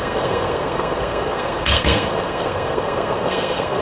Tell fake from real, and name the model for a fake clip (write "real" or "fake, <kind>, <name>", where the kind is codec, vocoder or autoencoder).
fake, codec, SNAC